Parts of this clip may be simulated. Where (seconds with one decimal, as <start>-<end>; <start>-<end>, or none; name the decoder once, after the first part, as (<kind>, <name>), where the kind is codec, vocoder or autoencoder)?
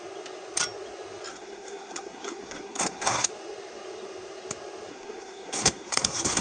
1.3-3.3 (codec, SNAC); 4.9-6.4